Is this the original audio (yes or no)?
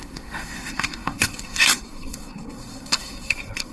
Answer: no